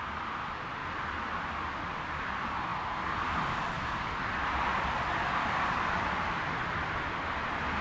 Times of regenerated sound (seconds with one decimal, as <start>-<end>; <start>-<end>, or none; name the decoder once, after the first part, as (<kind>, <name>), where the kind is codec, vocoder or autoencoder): 0.0-0.8 (vocoder, BigVGAN v2); 2.1-7.8

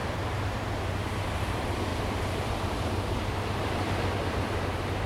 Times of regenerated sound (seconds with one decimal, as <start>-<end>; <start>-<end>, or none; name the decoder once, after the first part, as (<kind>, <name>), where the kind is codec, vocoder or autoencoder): 0.0-0.7 (vocoder, BigVGAN v2); 1.9-5.1

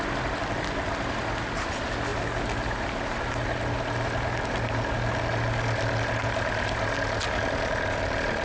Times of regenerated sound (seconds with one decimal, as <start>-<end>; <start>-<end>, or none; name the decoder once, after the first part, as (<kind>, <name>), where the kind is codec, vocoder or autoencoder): none

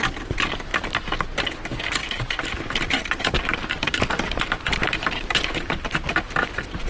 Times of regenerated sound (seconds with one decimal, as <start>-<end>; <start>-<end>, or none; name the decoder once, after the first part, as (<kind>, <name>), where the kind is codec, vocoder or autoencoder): 2.0-6.1 (vocoder, BigVGAN v2)

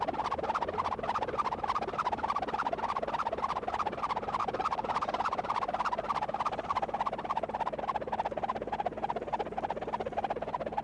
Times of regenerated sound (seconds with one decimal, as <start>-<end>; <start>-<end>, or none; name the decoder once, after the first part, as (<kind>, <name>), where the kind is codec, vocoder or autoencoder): 4.4-7.8 (vocoder, BigVGAN v2)